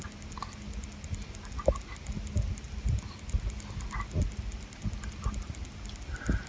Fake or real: real